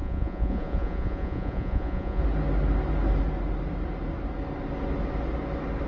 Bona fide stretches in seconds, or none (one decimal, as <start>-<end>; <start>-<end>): 2.2-5.9

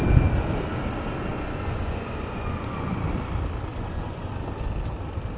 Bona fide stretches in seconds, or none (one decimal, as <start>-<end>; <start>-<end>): 0.0-1.3; 3.0-3.7; 4.3-5.4

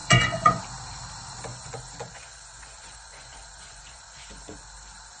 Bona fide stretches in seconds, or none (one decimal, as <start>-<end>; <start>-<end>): 0.6-1.5; 4.6-5.2

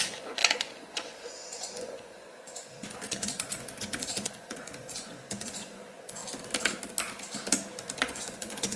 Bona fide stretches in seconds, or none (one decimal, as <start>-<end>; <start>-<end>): 6.2-8.0

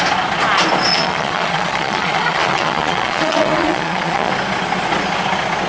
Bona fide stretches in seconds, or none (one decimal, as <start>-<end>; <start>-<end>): 0.0-0.9; 4.3-5.7

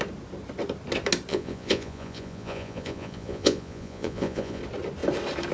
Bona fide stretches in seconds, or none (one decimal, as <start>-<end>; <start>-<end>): 0.0-1.3; 4.6-5.5

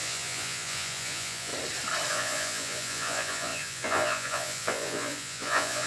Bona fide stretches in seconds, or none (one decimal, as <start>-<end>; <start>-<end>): 1.5-2.1